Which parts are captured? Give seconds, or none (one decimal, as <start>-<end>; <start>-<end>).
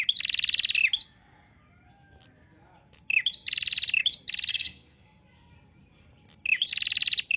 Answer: 0.0-4.5; 5.2-7.4